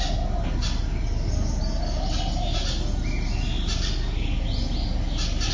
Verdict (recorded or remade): recorded